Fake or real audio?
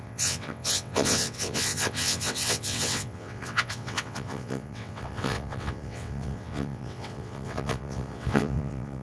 fake